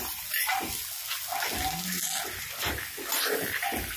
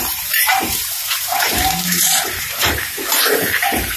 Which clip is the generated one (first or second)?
second